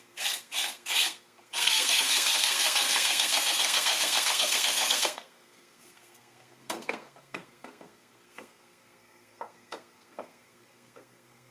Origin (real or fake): fake